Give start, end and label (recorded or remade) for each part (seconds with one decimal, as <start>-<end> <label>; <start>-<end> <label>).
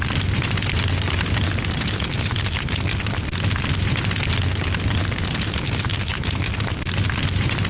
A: 0.0-5.9 recorded; 5.9-6.5 remade; 6.5-7.7 recorded